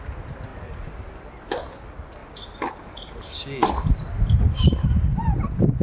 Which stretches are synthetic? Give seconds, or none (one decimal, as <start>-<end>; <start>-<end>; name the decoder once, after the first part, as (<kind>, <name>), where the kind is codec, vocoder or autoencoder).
none